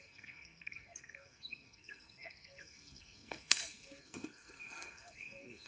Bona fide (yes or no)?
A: no